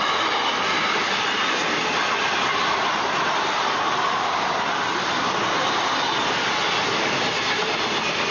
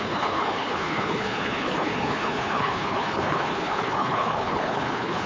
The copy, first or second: second